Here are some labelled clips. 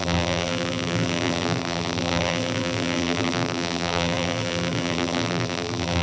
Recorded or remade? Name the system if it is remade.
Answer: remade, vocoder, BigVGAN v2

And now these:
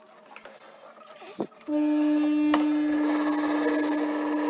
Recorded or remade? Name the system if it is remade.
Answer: recorded